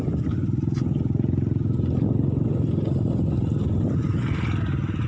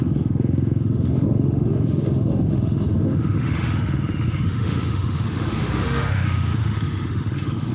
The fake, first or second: second